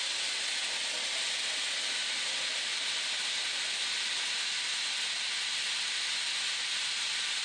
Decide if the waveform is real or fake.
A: real